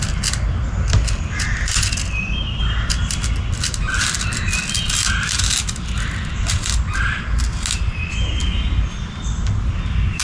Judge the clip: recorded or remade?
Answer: recorded